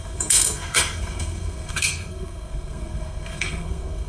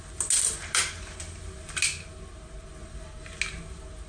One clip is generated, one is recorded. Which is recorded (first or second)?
second